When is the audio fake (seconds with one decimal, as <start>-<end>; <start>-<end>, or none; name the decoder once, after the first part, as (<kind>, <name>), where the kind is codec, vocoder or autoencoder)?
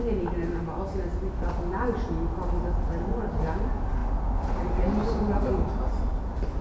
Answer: none